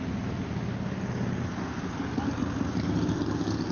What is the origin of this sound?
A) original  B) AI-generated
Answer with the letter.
A